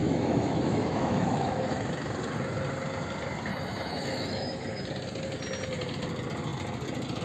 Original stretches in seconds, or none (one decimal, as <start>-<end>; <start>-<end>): 1.9-3.5; 4.8-7.2